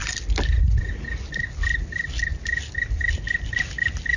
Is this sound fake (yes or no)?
no